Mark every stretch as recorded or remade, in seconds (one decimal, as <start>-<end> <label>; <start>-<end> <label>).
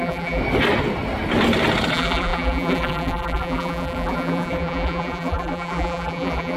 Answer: 0.0-0.4 remade; 0.4-1.9 recorded; 1.9-6.6 remade